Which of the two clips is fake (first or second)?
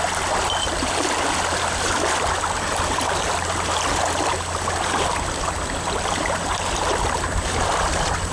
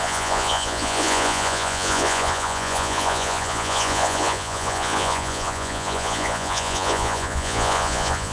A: second